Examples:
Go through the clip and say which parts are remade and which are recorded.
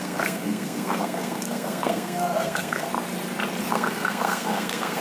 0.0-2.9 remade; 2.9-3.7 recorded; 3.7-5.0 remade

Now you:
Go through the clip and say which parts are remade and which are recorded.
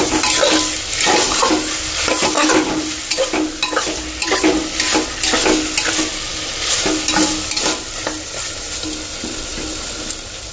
0.0-10.5 recorded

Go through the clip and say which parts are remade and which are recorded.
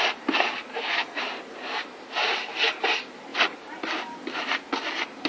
0.0-0.7 recorded; 0.7-1.2 remade; 1.2-5.3 recorded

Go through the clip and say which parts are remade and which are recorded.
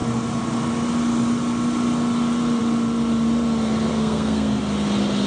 0.0-3.9 recorded; 3.9-4.6 remade; 4.6-5.3 recorded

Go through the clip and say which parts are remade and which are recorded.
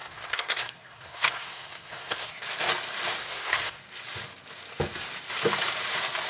0.0-2.3 remade; 2.3-3.2 recorded; 3.2-3.8 remade; 3.8-6.3 recorded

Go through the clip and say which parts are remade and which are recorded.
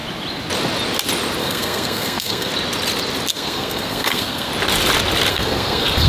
0.0-1.4 recorded; 1.4-2.5 remade; 2.5-3.3 recorded; 3.3-4.5 remade; 4.5-5.3 recorded; 5.3-6.1 remade